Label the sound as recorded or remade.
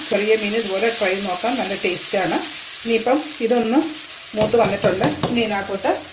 recorded